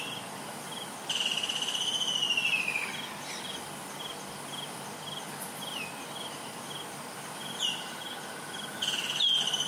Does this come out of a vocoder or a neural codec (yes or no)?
no